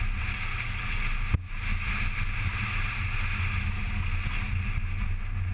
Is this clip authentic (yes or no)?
yes